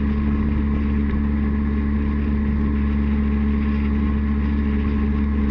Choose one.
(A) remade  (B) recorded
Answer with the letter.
B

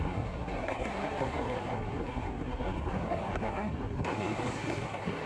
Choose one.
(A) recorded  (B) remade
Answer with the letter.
B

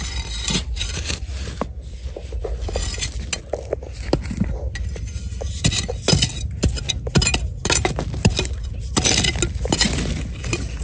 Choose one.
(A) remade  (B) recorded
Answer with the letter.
B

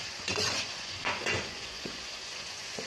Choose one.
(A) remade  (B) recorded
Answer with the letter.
A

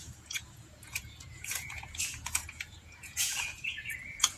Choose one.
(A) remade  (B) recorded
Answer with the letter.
A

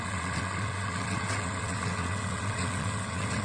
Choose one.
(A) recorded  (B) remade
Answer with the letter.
B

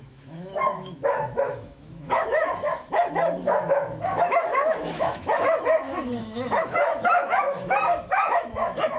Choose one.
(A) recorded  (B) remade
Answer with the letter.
B